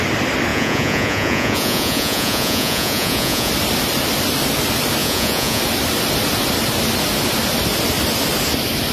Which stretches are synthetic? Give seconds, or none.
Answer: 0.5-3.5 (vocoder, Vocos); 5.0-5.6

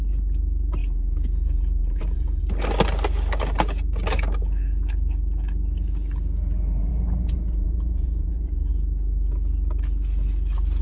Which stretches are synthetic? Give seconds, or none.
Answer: 0.8-2.4 (vocoder, Vocos); 6.9-8.7

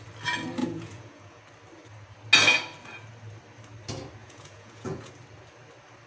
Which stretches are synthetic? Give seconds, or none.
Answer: 0.6-1.4 (vocoder, Vocos); 4.2-5.1

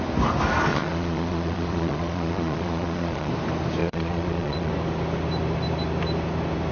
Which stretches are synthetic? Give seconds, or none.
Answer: 0.7-3.3 (vocoder, Vocos); 3.8-4.7

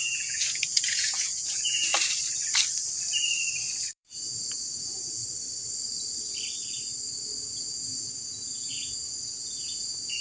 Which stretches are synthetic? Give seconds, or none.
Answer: 0.0-1.9 (vocoder, Vocos); 3.8-5.2; 7.4-10.2

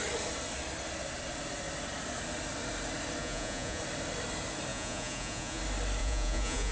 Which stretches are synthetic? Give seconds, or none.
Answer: 3.2-3.8 (vocoder, Vocos); 4.7-5.6; 6.0-6.7

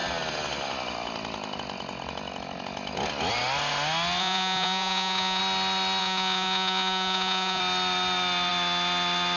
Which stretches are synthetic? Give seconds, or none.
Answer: 4.2-5.4 (vocoder, Vocos); 6.0-7.6